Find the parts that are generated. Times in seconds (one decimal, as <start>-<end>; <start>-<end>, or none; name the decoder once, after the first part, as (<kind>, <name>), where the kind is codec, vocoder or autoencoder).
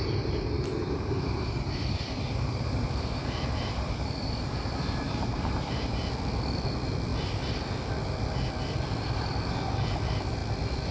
0.8-6.0 (vocoder, BigVGAN v2)